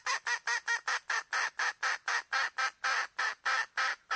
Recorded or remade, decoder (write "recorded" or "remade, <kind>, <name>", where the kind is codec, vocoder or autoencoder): recorded